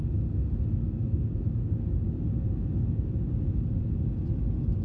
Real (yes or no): yes